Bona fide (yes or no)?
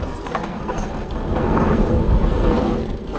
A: no